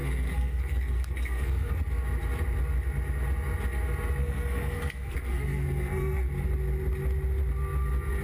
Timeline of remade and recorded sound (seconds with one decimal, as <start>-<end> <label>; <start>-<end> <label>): 0.0-1.8 remade; 1.8-4.2 recorded; 4.2-6.3 remade; 6.3-8.2 recorded